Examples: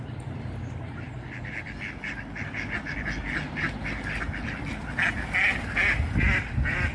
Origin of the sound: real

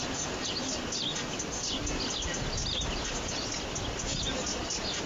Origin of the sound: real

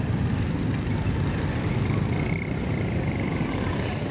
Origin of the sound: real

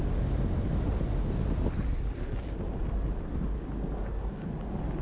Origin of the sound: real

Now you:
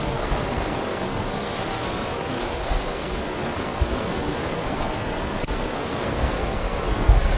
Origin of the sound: fake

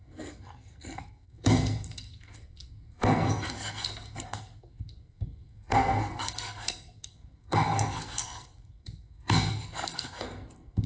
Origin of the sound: fake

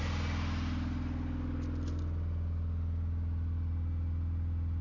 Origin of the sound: real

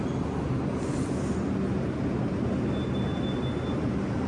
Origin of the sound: real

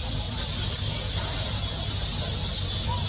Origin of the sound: real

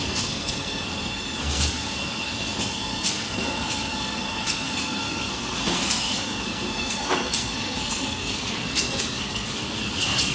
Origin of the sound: fake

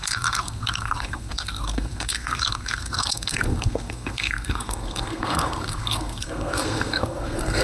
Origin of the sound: fake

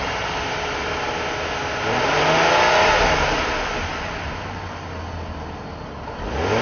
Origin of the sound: real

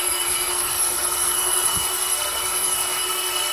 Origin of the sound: fake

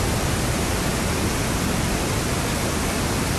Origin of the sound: real